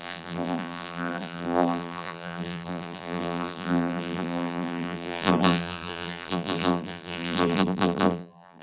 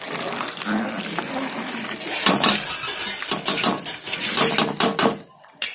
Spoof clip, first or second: first